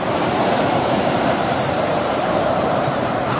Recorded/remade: remade